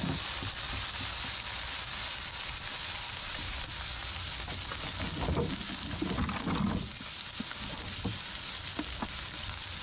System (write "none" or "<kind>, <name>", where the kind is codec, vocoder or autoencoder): none